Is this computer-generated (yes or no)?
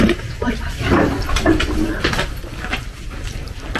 yes